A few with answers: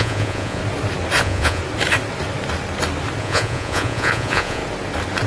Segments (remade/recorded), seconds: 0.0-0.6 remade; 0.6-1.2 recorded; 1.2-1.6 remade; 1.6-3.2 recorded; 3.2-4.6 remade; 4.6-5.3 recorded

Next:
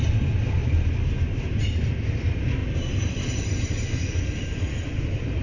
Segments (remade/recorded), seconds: 0.0-0.6 recorded; 0.6-1.8 remade; 1.8-2.6 recorded; 2.6-3.7 remade; 3.7-5.4 recorded

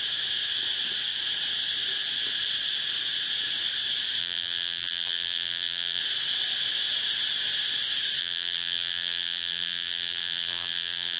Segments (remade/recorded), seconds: 0.0-4.2 recorded; 4.2-6.0 remade; 6.0-8.2 recorded; 8.2-11.2 remade